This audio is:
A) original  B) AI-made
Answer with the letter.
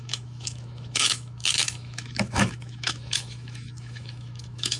B